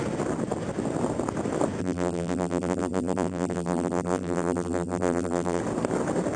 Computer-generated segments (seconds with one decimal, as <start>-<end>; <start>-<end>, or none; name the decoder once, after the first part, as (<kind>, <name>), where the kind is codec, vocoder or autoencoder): 1.8-5.6 (vocoder, BigVGAN v2)